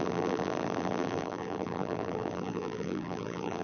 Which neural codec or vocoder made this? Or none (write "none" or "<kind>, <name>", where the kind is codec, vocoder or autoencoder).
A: vocoder, BigVGAN v2